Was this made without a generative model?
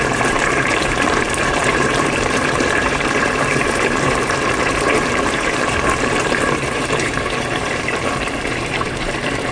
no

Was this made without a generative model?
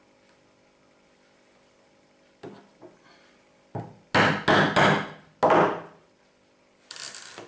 yes